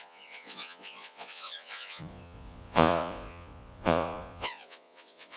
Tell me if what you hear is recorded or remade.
remade